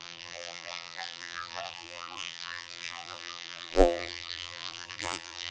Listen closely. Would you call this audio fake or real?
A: fake